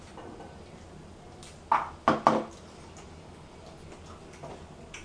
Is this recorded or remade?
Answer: recorded